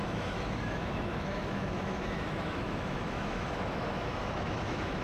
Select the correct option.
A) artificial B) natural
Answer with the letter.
A